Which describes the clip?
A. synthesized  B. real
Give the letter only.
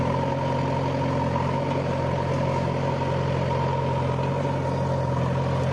B